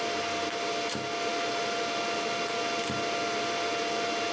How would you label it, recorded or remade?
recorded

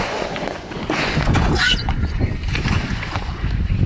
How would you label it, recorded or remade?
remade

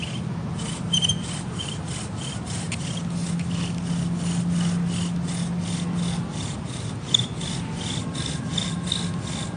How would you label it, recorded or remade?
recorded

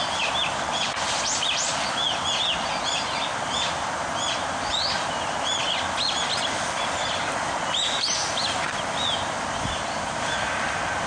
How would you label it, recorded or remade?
recorded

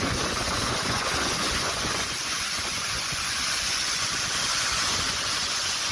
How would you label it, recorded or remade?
remade